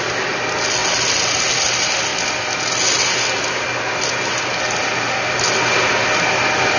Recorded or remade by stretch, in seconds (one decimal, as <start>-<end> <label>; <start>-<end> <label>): 0.0-6.8 recorded